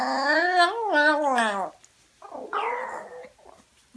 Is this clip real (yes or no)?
yes